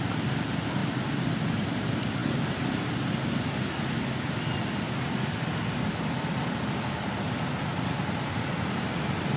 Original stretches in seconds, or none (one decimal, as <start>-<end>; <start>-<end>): 0.0-0.8; 1.3-9.4